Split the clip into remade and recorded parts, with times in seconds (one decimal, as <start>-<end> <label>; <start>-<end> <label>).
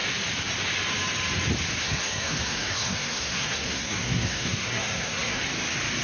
0.0-1.8 recorded; 1.8-5.4 remade; 5.4-6.0 recorded